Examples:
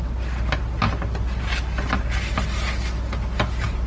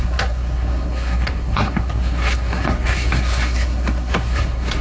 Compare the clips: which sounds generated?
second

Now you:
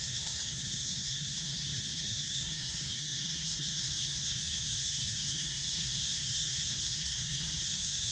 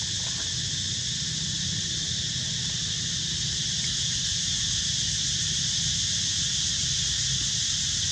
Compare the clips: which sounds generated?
first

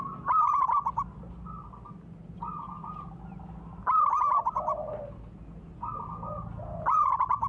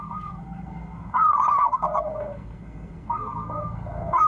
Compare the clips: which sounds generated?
second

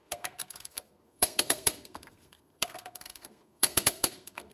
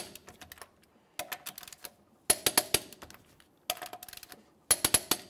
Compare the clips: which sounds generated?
first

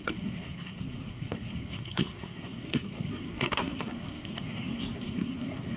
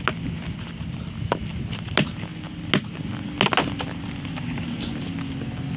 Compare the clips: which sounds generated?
first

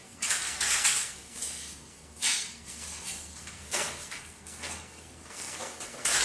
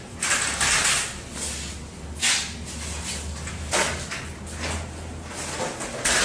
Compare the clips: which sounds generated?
first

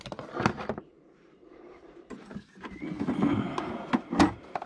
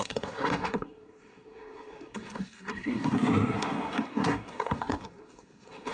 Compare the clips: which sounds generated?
second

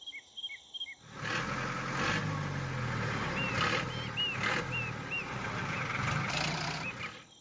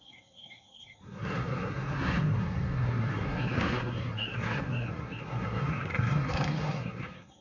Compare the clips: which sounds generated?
second